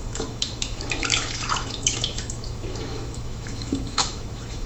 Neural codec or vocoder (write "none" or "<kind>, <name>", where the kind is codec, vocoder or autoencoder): autoencoder, DAC-VAE